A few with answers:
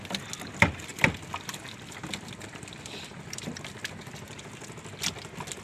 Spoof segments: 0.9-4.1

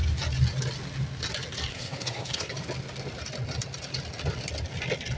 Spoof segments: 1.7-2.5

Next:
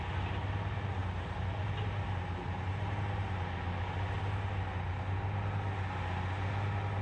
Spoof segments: none